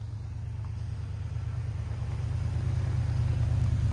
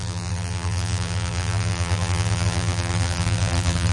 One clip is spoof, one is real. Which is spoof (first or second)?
second